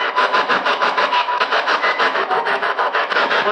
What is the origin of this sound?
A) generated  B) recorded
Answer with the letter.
A